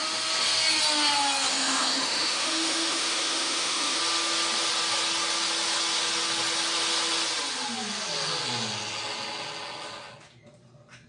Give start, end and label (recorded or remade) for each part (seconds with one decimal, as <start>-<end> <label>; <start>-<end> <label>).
0.0-1.5 recorded; 1.5-4.0 remade; 4.0-11.1 recorded